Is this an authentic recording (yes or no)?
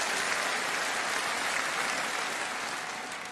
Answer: yes